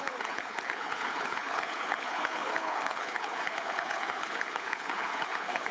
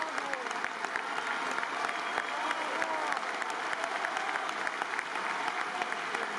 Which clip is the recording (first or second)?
second